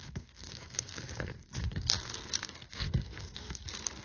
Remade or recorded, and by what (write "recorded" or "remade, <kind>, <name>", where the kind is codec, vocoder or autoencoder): remade, codec, SNAC